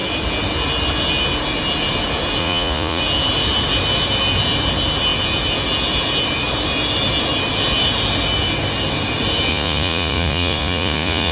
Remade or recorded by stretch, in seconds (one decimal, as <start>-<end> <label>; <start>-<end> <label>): 0.0-2.4 recorded; 2.4-3.0 remade; 3.0-9.5 recorded; 9.5-11.3 remade